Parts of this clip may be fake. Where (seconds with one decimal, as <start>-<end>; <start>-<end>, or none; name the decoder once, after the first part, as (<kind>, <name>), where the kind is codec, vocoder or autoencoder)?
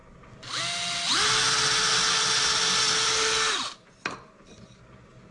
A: none